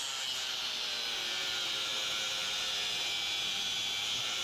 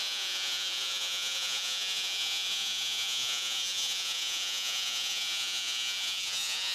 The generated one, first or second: second